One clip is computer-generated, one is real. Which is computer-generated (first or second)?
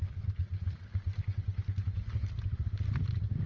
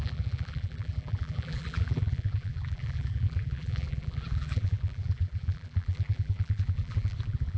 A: second